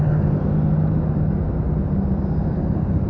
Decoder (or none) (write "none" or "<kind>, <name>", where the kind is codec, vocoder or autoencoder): none